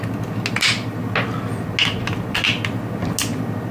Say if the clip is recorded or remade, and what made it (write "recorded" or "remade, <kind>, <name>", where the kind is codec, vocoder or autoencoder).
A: recorded